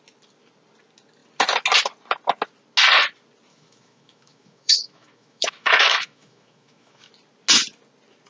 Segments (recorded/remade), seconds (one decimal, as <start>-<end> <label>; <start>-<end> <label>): 0.0-3.5 recorded; 3.5-7.1 remade; 7.1-8.3 recorded